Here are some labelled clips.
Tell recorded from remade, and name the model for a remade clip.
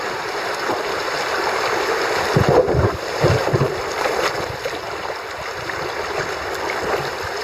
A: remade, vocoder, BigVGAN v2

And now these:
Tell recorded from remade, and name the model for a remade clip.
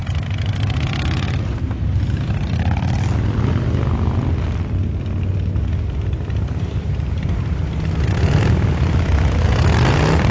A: recorded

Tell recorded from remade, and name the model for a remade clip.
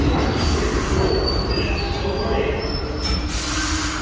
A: recorded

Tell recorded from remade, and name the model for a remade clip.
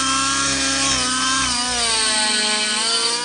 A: recorded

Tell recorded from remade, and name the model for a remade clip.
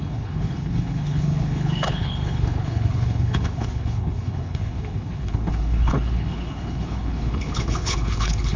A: remade, codec, HILCodec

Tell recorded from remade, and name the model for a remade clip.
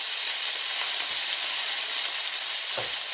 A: recorded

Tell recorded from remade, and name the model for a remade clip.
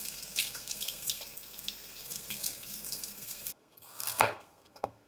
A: remade, codec, SNAC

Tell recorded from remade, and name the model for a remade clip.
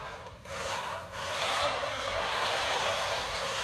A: remade, codec, SNAC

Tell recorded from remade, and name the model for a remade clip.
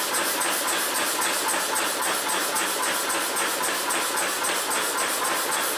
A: recorded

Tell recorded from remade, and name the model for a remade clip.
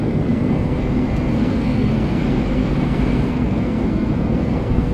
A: remade, codec, SNAC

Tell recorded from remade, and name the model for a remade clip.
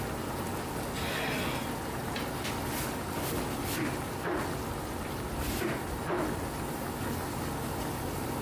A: recorded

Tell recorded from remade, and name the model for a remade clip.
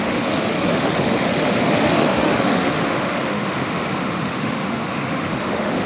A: remade, autoencoder, DAC-VAE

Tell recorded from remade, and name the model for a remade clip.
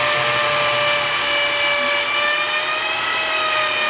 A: recorded